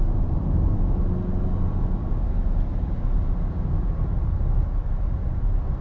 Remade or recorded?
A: recorded